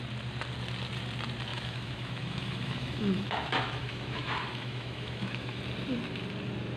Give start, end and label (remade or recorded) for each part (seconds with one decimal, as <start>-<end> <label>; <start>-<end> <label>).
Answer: 0.0-1.5 recorded; 1.5-5.6 remade; 5.6-6.8 recorded